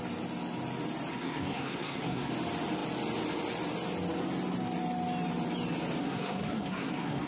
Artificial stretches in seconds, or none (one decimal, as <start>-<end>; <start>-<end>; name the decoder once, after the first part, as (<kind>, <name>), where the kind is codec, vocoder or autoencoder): 1.1-2.3 (codec, SNAC); 6.0-7.3

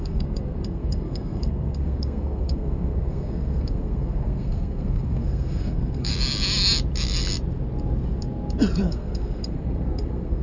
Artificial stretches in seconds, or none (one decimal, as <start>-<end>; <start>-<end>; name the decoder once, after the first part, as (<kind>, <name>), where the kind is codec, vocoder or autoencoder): 0.0-6.1 (codec, SNAC); 8.9-10.4